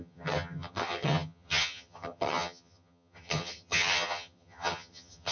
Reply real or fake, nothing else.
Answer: fake